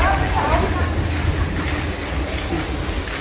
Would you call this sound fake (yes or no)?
no